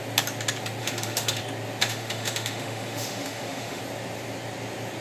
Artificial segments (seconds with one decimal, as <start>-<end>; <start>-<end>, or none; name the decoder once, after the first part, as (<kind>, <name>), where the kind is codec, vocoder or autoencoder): 0.8-1.4 (autoencoder, DAC-VAE); 1.8-3.8